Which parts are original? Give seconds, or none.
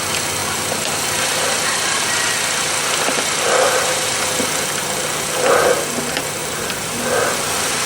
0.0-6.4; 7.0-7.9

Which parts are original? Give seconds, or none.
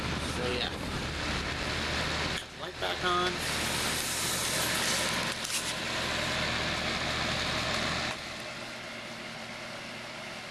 0.0-10.5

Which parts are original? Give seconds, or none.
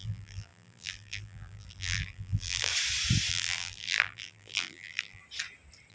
2.7-3.3; 5.2-5.9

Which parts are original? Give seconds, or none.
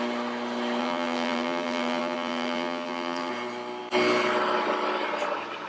0.0-0.8; 3.3-5.7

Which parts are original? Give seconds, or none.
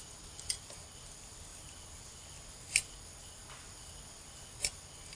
0.0-5.1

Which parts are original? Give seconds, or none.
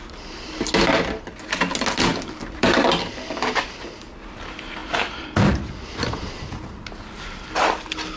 0.0-2.1; 3.1-4.8; 6.3-8.2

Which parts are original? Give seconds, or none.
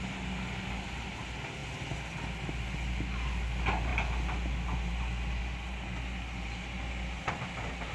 0.0-7.9